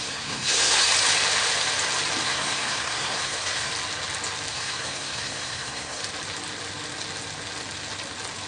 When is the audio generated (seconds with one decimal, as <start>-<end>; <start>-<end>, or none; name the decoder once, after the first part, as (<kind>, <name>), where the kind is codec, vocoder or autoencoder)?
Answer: 0.0-0.9 (codec, SNAC); 2.2-3.7; 4.5-6.0